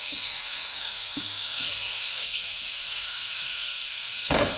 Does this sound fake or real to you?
fake